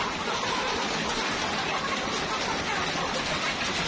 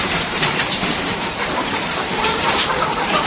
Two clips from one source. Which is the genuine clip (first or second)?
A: first